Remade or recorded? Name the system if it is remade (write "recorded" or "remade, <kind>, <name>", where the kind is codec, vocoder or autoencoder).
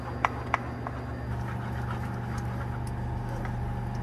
recorded